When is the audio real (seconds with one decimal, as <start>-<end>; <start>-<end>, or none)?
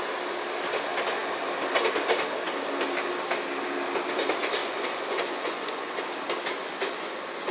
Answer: 0.0-4.6; 6.0-6.6